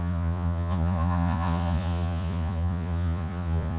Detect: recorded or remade remade